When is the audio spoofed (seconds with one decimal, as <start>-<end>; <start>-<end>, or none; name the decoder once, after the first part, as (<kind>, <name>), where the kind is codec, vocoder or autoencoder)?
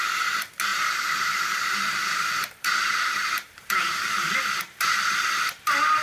0.7-4.3 (vocoder, BigVGAN v2)